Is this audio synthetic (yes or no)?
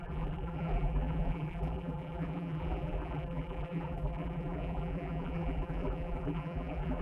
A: yes